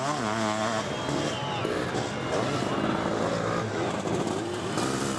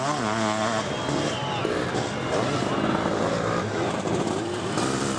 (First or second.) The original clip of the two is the first